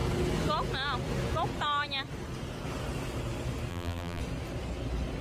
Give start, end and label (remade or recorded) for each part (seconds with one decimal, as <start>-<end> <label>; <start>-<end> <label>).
0.0-3.7 recorded; 3.7-4.2 remade; 4.2-5.2 recorded